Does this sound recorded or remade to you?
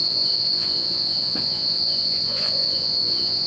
remade